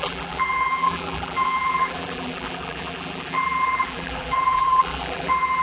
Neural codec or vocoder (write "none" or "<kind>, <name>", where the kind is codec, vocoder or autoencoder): vocoder, BigVGAN v2